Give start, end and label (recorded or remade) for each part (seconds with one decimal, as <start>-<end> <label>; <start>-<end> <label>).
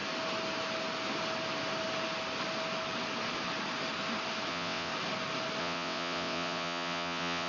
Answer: 0.0-4.5 recorded; 4.5-4.9 remade; 4.9-5.6 recorded; 5.6-7.5 remade